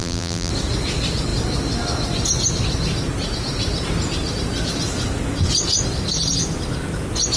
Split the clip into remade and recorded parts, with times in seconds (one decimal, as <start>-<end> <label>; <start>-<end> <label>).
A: 0.0-0.5 remade; 0.5-7.4 recorded